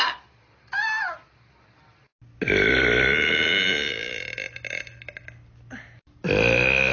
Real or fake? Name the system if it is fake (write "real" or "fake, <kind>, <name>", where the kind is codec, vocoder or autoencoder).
real